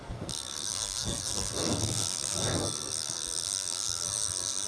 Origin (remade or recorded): remade